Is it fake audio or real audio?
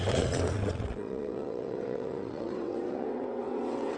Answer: fake